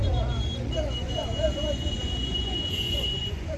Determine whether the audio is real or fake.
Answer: fake